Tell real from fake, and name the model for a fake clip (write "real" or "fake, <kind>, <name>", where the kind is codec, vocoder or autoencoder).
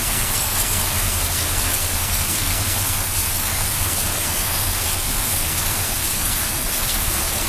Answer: fake, codec, SNAC